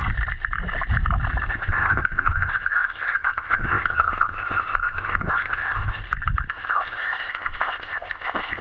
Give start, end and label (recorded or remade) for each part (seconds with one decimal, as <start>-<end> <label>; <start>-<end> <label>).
0.0-1.5 recorded; 1.5-6.0 remade; 6.0-6.5 recorded; 6.5-8.6 remade